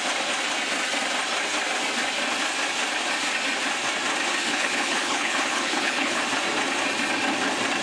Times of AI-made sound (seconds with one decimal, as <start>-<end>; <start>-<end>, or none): 4.5-6.2